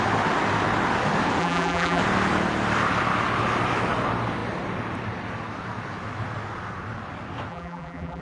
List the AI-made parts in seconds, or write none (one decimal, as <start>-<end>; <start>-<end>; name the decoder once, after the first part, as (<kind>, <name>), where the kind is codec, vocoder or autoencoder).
1.4-2.0 (vocoder, BigVGAN v2); 7.5-8.2